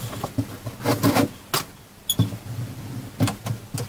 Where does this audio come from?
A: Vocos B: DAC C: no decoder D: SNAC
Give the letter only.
C